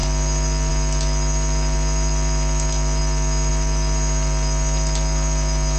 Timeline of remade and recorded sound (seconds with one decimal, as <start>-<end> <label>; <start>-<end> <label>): 0.0-5.8 recorded